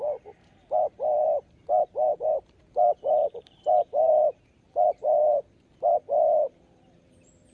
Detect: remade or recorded remade